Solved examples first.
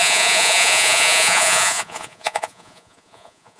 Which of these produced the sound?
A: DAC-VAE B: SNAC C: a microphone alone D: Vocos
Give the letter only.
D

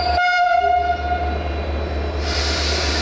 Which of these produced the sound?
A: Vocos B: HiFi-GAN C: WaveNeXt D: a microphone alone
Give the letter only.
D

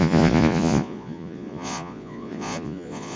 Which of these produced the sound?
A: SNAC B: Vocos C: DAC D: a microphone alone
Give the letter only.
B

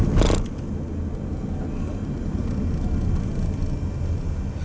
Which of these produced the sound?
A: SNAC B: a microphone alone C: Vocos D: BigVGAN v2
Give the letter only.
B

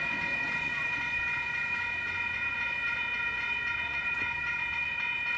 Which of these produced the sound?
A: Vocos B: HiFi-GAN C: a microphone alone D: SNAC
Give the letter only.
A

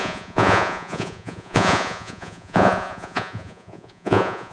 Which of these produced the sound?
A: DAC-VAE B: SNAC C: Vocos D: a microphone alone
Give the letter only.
C